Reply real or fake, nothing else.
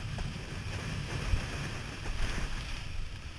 fake